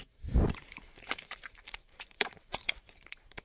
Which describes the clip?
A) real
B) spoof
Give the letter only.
B